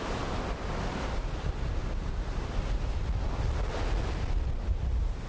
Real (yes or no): yes